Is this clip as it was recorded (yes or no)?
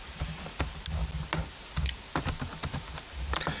yes